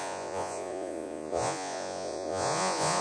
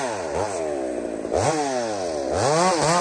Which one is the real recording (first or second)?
second